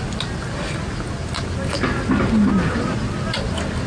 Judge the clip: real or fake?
real